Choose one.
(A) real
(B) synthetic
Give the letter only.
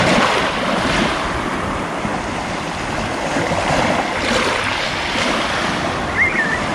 A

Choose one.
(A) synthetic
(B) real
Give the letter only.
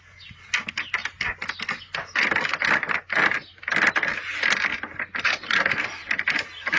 B